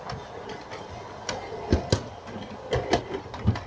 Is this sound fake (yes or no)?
no